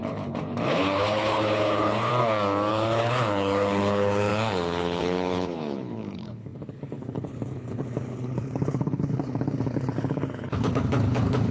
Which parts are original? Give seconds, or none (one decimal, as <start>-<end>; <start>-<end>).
2.1-2.7

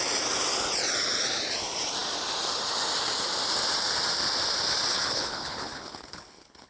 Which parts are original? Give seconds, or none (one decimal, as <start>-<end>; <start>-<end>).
0.0-4.9

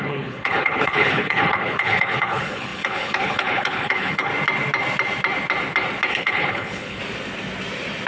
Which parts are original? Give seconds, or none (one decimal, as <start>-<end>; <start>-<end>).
4.3-6.1; 7.0-8.1

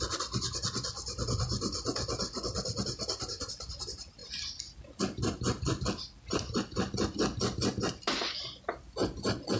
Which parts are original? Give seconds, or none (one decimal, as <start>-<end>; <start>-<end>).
0.0-9.6

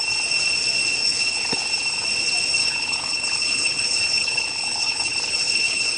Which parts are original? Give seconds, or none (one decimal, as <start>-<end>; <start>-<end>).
0.0-1.0; 1.6-2.6

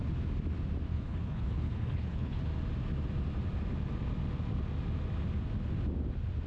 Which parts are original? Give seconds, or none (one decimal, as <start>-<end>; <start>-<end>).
0.0-0.9; 2.4-6.5

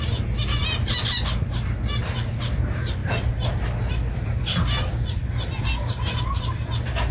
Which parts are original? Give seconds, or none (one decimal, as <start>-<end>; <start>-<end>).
0.0-7.1